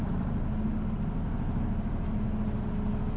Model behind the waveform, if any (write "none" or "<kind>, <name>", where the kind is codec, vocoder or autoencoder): none